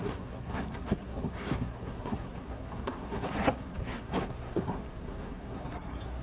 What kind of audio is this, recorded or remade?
remade